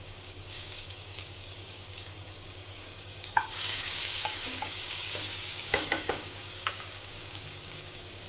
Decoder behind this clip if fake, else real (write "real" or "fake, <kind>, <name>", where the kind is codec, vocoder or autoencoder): fake, codec, DAC